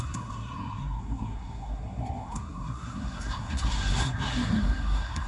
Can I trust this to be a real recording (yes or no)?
no